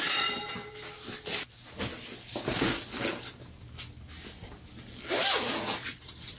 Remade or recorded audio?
recorded